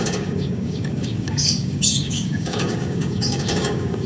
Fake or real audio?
fake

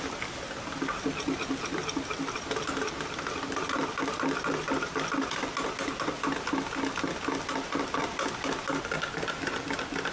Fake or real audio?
real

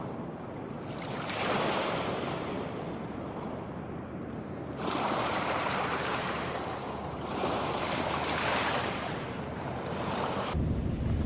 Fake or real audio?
fake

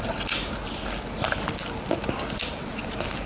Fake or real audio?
real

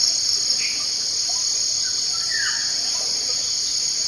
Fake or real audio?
real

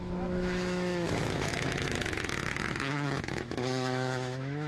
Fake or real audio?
fake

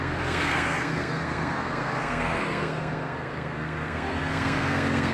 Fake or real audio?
fake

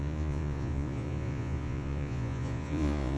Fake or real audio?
fake